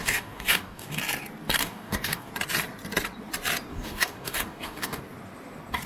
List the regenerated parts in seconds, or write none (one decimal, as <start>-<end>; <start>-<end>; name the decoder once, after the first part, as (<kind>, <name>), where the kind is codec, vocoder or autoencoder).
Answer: 0.0-1.0 (codec, DAC); 1.6-2.3; 3.7-5.0